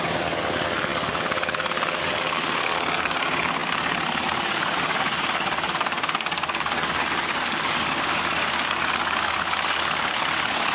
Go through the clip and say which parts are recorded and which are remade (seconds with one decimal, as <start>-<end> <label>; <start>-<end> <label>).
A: 0.0-10.7 remade